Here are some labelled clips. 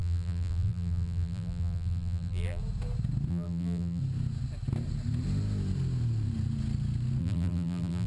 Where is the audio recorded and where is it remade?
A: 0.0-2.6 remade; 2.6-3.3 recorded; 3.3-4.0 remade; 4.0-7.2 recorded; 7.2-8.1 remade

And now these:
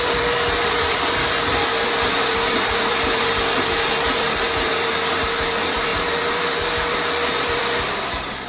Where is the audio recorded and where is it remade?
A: 0.0-8.5 remade

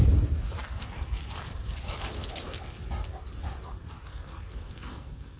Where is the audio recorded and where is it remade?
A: 0.0-0.8 recorded; 0.8-1.3 remade; 1.3-4.1 recorded; 4.1-5.4 remade

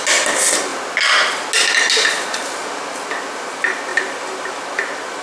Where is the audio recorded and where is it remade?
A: 0.0-5.2 recorded

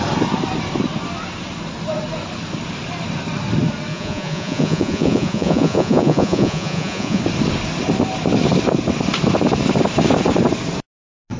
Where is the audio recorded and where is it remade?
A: 0.0-3.9 recorded; 3.9-7.2 remade; 7.2-11.4 recorded

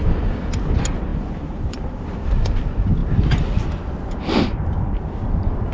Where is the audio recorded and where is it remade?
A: 0.0-1.1 recorded; 1.1-2.5 remade; 2.5-5.7 recorded